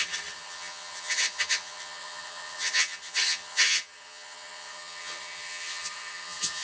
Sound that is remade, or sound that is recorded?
remade